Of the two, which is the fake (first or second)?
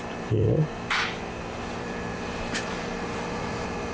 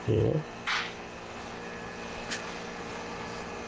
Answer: first